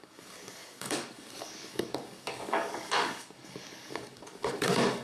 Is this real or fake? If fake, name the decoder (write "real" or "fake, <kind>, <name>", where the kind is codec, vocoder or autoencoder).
fake, codec, DAC